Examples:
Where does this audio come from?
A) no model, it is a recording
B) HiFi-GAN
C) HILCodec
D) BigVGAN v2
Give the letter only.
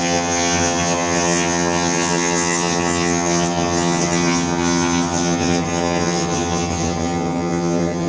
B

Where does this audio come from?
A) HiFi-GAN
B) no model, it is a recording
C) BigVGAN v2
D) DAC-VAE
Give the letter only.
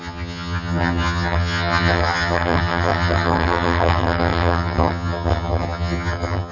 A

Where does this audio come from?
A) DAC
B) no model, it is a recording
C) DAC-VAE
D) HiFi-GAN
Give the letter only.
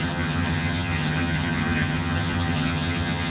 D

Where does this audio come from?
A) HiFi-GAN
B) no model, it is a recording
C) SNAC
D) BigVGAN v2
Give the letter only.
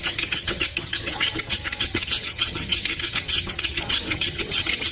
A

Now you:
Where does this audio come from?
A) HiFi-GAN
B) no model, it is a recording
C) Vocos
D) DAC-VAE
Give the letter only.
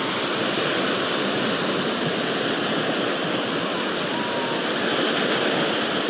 B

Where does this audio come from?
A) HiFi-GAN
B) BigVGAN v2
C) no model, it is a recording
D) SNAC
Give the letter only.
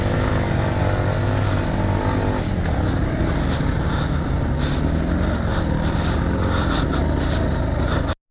C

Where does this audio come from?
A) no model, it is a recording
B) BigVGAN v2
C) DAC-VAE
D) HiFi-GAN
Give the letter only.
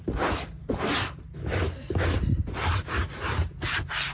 A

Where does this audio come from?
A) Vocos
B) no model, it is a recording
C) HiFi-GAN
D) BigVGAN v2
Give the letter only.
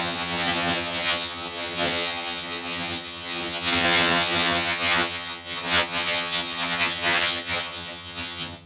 C